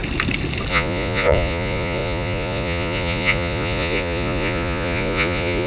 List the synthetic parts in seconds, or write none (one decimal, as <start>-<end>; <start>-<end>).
0.7-5.7